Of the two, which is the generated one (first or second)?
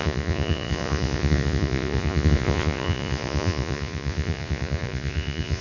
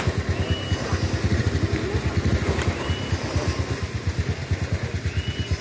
first